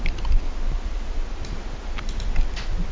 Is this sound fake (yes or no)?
no